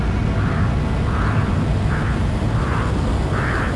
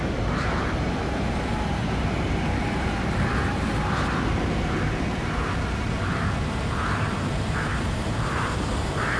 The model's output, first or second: second